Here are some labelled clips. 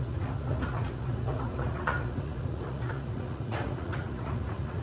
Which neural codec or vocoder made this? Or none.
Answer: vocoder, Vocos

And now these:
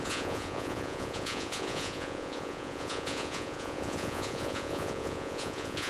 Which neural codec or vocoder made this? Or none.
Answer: vocoder, Vocos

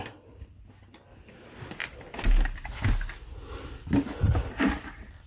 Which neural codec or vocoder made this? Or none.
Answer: none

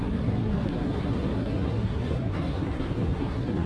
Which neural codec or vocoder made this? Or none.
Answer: codec, SNAC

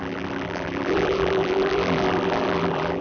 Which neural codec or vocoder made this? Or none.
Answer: vocoder, BigVGAN v2